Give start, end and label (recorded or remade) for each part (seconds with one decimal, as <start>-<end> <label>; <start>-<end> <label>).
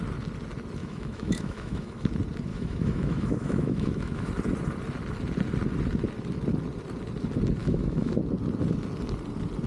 0.0-0.8 recorded; 0.8-2.1 remade; 2.1-2.5 recorded; 2.5-4.3 remade; 4.3-7.6 recorded; 7.6-8.2 remade; 8.2-9.7 recorded